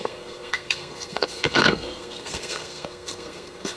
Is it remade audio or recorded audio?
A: remade